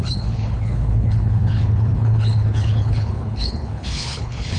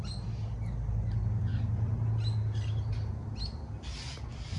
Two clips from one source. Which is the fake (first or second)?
first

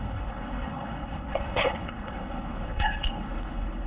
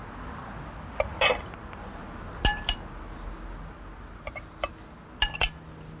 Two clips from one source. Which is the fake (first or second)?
first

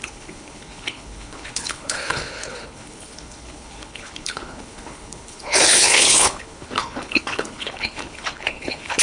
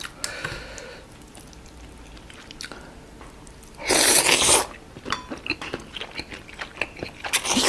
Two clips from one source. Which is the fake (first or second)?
first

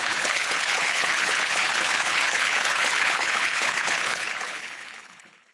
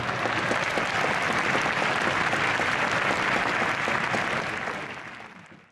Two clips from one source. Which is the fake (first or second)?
first